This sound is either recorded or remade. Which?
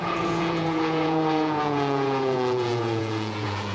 remade